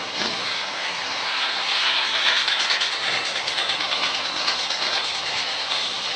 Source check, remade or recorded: remade